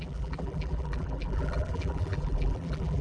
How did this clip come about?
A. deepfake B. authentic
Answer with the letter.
A